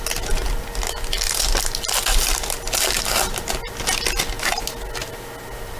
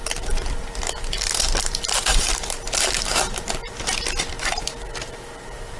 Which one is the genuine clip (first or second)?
first